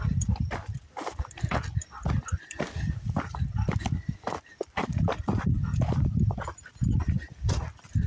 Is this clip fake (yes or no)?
yes